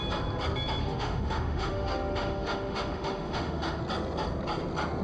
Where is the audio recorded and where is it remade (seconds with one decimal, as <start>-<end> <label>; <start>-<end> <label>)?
0.0-0.8 recorded; 0.8-3.8 remade; 3.8-5.0 recorded